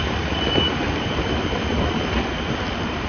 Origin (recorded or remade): remade